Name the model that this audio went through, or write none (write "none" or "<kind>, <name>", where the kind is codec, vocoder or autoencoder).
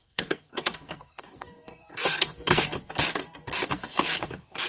codec, SNAC